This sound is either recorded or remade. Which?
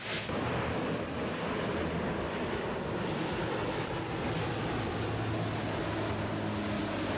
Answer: recorded